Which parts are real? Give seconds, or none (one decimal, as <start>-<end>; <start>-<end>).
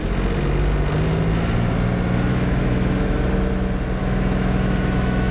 0.0-2.3; 3.4-4.0